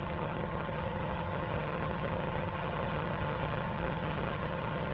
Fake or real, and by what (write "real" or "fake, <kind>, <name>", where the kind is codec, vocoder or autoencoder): fake, vocoder, HiFi-GAN